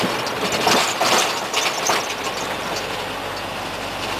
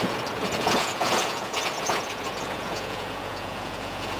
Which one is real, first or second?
first